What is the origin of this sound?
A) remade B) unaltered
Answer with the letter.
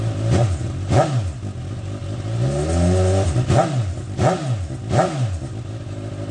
B